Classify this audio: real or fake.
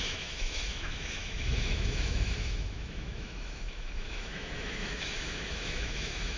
fake